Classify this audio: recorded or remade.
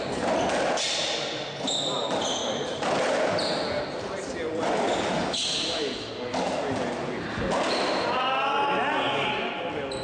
recorded